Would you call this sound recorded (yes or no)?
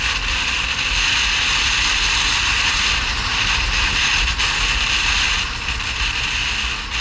yes